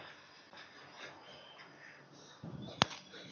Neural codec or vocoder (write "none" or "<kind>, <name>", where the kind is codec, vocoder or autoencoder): none